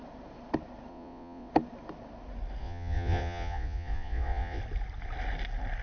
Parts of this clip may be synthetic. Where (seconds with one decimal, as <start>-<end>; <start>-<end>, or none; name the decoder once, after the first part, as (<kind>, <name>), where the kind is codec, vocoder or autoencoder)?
0.9-1.5 (vocoder, Vocos); 2.6-4.6